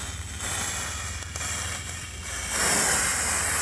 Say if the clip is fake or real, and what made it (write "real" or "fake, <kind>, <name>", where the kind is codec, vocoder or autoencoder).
real